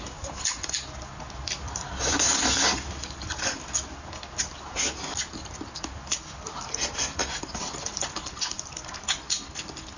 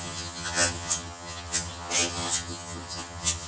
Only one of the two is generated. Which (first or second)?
second